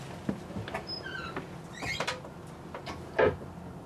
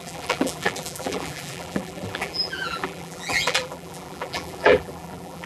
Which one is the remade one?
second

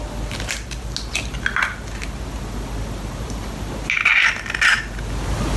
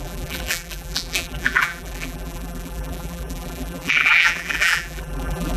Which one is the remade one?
second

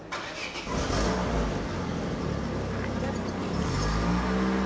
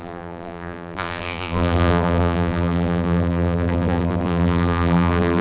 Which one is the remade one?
second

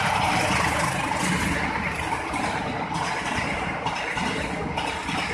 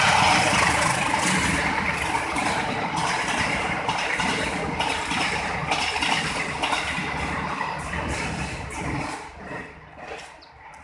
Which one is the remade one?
second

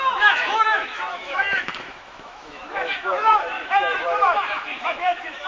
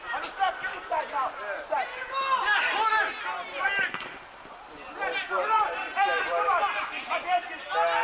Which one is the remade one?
first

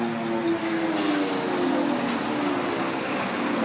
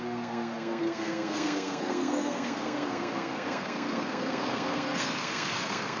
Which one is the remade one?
second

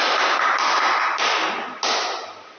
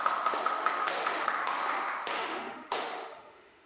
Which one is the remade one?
second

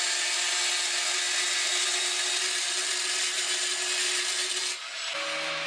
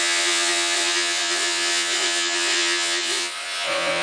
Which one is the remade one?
second